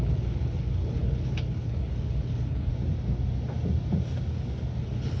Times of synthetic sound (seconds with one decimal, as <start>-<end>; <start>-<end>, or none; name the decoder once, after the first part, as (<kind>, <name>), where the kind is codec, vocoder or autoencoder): 0.0-2.7 (codec, HILCodec); 4.8-5.2